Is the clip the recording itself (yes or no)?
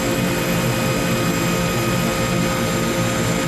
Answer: yes